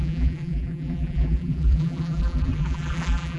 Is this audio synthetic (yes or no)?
yes